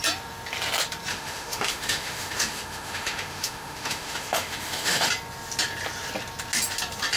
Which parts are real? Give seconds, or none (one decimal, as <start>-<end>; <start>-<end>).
0.0-1.1; 5.1-7.2